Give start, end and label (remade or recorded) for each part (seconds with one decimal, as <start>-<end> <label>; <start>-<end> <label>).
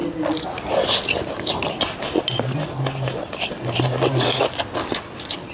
0.0-5.5 recorded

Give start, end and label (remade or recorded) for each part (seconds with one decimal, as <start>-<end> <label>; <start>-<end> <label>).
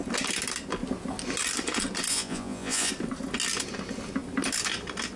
0.0-2.1 recorded; 2.1-2.9 remade; 2.9-5.2 recorded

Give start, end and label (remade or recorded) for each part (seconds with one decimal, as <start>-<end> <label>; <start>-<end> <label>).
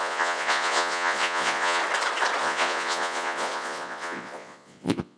0.0-1.8 remade; 1.8-2.4 recorded; 2.4-5.2 remade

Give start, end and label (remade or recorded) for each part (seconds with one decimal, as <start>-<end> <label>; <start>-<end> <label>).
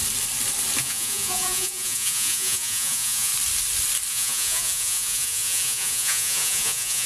0.0-0.8 recorded; 0.8-3.3 remade; 3.3-4.1 recorded; 4.1-7.1 remade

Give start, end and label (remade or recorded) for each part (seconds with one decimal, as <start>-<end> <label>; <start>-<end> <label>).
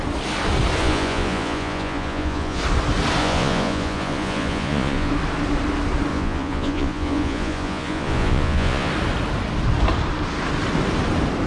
0.0-0.8 recorded; 0.8-2.6 remade; 2.6-3.2 recorded; 3.2-5.1 remade; 5.1-6.1 recorded; 6.1-8.9 remade; 8.9-11.5 recorded